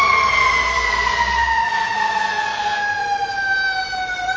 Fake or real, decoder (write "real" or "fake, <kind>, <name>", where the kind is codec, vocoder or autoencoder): fake, vocoder, BigVGAN v2